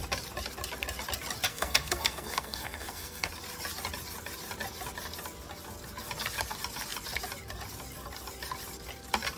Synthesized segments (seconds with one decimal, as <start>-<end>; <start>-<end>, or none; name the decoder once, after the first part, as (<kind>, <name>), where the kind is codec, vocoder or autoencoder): 1.5-3.3 (codec, SNAC)